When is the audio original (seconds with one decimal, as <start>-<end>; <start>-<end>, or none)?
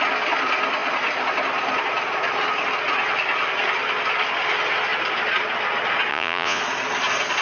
0.0-6.1; 6.6-7.4